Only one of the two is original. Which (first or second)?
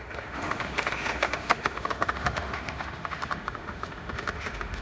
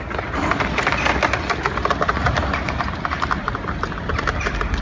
second